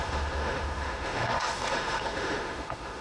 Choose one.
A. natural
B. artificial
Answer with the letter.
B